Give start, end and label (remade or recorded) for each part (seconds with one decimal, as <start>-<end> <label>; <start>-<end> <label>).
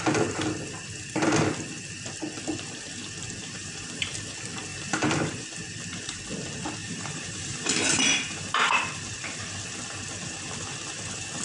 0.0-3.4 recorded; 3.4-4.1 remade; 4.1-4.7 recorded; 4.7-6.2 remade; 6.2-6.8 recorded; 6.8-11.4 remade